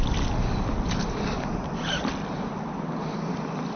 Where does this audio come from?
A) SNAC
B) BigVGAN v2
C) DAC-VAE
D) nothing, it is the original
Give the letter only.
D